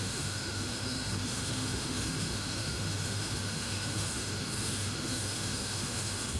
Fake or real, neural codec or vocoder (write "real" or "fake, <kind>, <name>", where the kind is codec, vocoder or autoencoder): fake, autoencoder, DAC-VAE